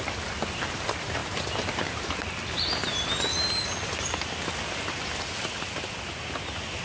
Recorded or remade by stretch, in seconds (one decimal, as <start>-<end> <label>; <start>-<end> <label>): 0.0-6.8 recorded